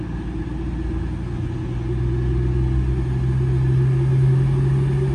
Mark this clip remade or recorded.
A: recorded